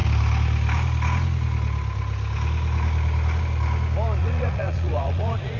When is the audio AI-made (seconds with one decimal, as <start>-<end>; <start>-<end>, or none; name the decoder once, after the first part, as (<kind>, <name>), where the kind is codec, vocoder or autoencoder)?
4.2-5.6 (vocoder, Vocos)